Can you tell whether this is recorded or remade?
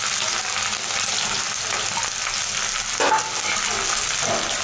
recorded